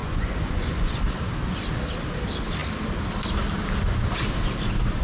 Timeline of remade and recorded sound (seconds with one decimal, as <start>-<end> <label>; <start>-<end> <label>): 0.0-1.0 remade; 1.0-5.0 recorded